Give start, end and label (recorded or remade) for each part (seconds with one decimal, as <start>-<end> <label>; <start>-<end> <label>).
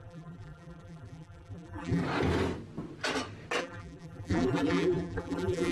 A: 0.0-2.0 remade; 2.0-3.6 recorded; 3.6-5.7 remade